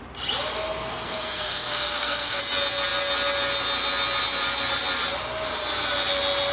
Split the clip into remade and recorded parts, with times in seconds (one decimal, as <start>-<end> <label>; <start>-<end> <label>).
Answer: 0.0-0.7 recorded; 0.7-2.4 remade; 2.4-6.5 recorded